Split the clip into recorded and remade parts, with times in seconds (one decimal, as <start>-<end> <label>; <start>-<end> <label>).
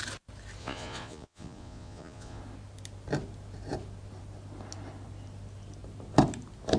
0.0-0.6 recorded; 0.6-2.4 remade; 2.4-6.8 recorded